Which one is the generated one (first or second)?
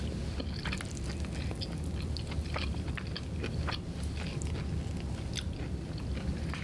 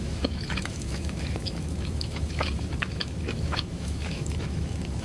second